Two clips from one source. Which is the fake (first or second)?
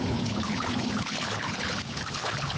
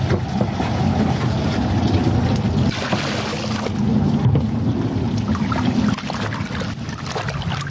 first